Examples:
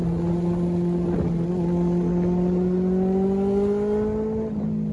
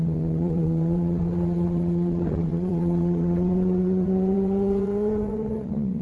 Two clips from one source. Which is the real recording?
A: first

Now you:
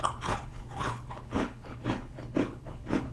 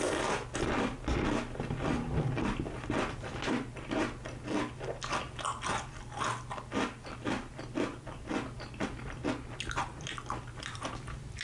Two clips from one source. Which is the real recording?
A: second